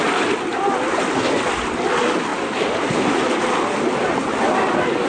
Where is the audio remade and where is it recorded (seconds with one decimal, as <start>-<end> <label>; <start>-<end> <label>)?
0.0-5.1 recorded